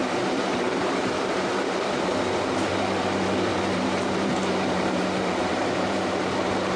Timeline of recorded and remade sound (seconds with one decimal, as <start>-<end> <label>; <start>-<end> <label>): 0.0-6.8 remade